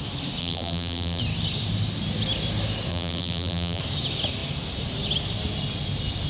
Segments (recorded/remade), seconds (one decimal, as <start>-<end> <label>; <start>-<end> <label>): 0.0-0.4 recorded; 0.4-1.2 remade; 1.2-2.9 recorded; 2.9-3.8 remade; 3.8-6.3 recorded

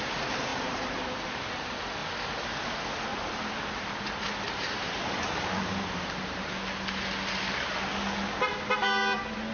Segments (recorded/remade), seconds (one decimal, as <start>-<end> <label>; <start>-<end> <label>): 0.0-0.5 recorded; 0.5-1.4 remade; 1.4-3.1 recorded; 3.1-6.5 remade; 6.5-9.5 recorded

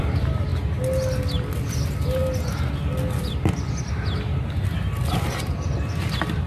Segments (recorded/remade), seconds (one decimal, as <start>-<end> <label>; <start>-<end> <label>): 0.0-0.5 remade; 0.5-1.5 recorded; 1.5-2.2 remade; 2.2-5.1 recorded; 5.1-6.5 remade